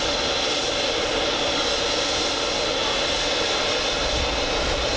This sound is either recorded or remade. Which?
recorded